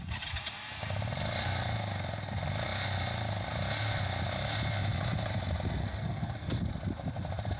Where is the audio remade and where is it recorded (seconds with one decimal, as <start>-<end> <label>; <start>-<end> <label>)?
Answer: 0.0-5.8 recorded; 5.8-6.7 remade; 6.7-7.6 recorded